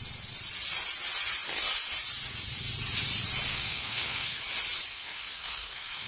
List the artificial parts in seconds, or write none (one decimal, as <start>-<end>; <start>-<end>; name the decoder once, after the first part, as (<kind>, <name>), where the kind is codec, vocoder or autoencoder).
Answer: 3.5-4.4 (codec, SNAC); 4.9-6.1